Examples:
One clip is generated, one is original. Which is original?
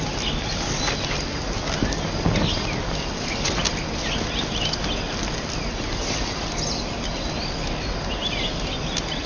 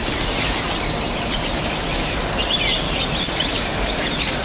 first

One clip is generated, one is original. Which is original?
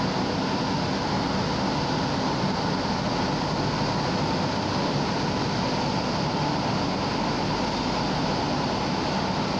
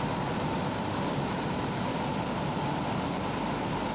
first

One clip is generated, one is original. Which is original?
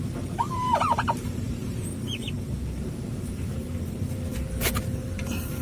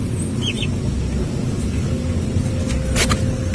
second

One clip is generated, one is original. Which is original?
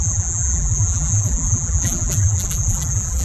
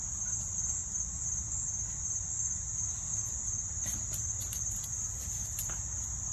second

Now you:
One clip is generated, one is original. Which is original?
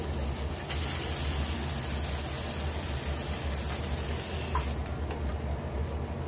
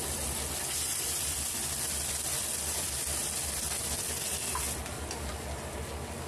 first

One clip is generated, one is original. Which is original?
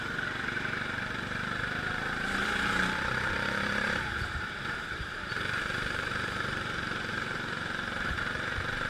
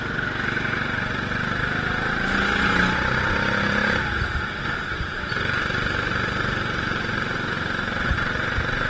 second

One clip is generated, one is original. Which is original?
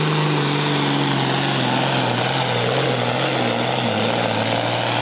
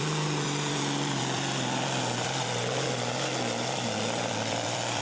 first